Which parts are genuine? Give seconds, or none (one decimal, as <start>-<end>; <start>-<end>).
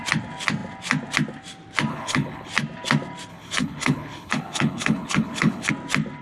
0.0-1.9; 2.5-3.3; 5.7-6.2